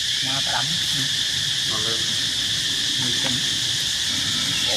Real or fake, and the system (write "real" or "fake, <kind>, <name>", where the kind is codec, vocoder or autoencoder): real